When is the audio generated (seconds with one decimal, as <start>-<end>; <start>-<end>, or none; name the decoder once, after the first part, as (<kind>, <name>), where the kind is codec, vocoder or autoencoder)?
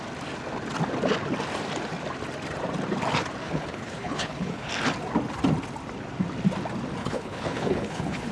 3.4-4.7 (codec, HILCodec); 7.0-8.3